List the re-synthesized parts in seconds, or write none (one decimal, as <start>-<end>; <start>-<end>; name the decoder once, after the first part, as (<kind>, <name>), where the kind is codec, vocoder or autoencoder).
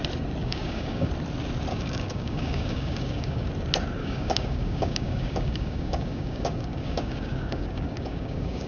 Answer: 0.4-1.1 (codec, DAC); 1.7-3.5; 4.0-8.7